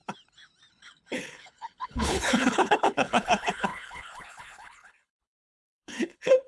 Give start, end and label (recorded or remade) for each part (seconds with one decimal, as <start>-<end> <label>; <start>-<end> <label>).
0.0-0.7 recorded; 0.7-6.5 remade